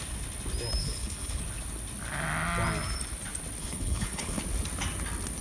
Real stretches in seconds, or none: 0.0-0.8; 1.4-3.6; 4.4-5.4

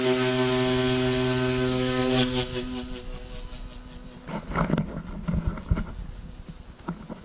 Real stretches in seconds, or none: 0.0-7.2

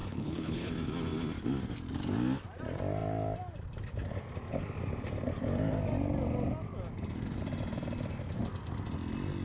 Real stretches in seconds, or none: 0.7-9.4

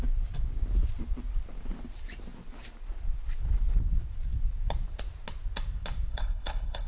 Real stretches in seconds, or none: 0.0-6.1

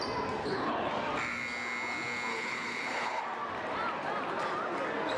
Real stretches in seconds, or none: 0.0-0.4; 0.9-2.3; 3.2-5.2